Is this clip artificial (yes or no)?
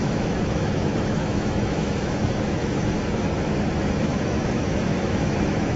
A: yes